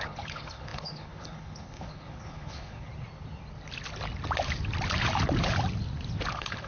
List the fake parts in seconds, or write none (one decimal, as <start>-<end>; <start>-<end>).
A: 0.0-2.9; 6.3-6.7